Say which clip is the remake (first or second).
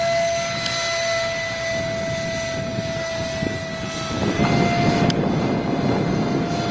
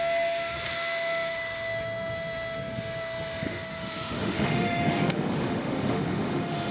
second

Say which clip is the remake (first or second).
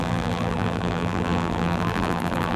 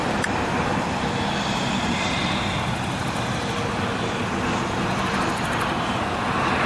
first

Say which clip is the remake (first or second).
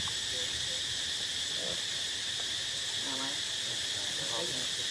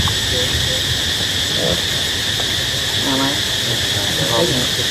first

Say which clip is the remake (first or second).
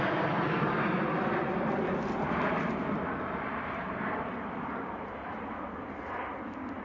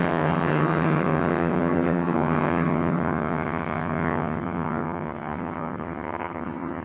second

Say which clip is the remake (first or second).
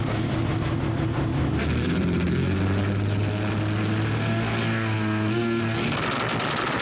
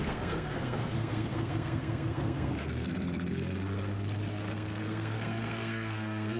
second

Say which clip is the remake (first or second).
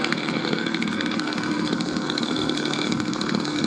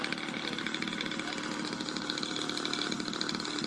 first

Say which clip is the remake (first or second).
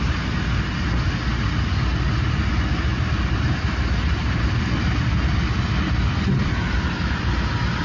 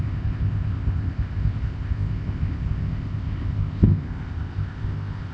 second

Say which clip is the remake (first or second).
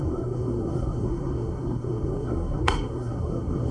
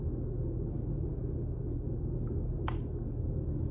first